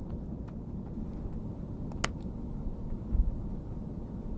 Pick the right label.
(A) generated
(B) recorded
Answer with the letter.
B